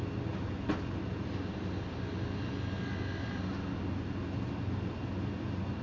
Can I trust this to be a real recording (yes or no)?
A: yes